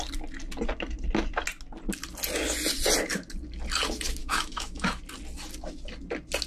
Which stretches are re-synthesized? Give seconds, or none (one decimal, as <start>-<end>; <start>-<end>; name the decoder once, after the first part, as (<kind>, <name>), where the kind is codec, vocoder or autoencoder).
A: 4.2-5.0 (autoencoder, DAC-VAE)